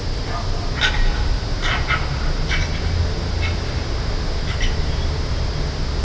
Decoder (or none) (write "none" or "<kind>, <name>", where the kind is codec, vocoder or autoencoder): none